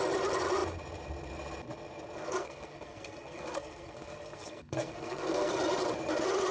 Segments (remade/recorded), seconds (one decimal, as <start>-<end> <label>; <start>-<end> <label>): 0.0-2.4 recorded; 2.4-5.5 remade; 5.5-6.5 recorded